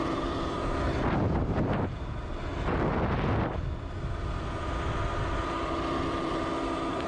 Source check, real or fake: real